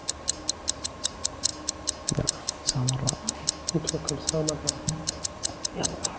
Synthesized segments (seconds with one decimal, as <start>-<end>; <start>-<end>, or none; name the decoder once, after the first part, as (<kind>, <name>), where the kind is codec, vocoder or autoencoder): 0.7-1.5 (vocoder, Vocos); 5.2-6.2

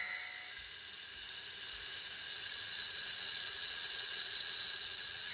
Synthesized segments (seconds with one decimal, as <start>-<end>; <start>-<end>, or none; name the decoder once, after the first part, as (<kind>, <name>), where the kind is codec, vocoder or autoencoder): 2.3-5.3 (vocoder, WaveNeXt)

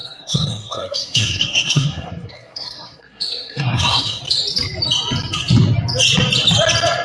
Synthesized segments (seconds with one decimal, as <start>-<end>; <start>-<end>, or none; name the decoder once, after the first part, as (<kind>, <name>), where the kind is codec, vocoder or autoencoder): 0.0-4.2 (codec, SNAC)

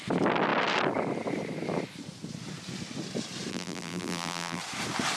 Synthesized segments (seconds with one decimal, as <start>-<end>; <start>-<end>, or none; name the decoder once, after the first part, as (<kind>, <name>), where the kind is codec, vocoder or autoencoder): 3.5-4.6 (vocoder, BigVGAN v2)

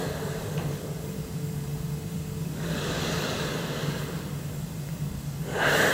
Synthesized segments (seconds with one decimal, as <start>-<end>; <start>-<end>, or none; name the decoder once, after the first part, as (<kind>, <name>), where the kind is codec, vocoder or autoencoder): 0.0-5.9 (codec, DAC)

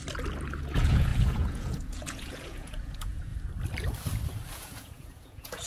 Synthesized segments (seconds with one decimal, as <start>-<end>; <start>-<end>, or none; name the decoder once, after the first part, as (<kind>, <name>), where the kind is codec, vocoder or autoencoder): 0.6-3.3 (vocoder, Vocos); 4.5-5.7